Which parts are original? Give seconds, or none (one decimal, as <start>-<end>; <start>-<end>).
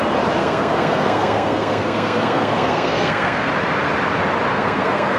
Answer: 0.0-0.4; 3.5-4.5